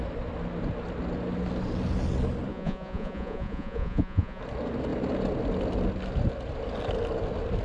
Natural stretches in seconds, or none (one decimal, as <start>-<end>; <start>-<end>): 0.0-2.5; 4.4-7.6